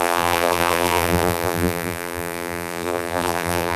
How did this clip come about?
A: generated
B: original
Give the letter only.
A